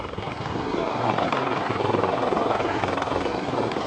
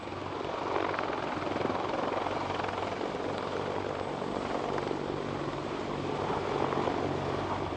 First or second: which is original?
second